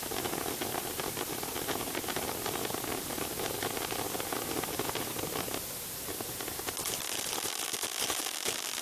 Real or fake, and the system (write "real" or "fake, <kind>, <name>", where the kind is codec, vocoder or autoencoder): real